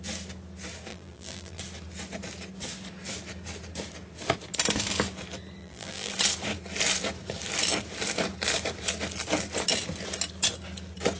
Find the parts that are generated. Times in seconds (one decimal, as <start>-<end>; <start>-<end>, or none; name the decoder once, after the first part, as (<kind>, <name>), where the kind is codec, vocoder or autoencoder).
0.9-1.6 (vocoder, BigVGAN v2); 5.6-6.1